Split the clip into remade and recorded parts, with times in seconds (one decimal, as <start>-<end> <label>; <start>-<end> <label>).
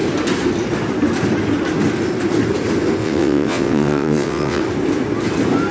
0.0-3.0 recorded; 3.0-4.6 remade; 4.6-5.7 recorded